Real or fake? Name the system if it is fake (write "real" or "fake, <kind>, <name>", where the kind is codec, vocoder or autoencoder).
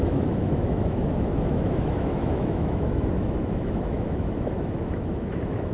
fake, autoencoder, DAC-VAE